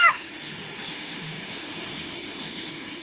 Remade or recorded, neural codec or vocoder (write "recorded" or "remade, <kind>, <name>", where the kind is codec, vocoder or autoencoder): remade, autoencoder, DAC-VAE